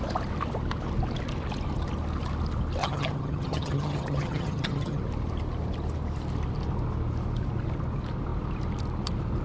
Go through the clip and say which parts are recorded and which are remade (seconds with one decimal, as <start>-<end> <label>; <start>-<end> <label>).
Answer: 0.0-2.8 recorded; 2.8-5.0 remade; 5.0-9.4 recorded